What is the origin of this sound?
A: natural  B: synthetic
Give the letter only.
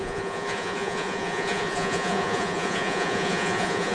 B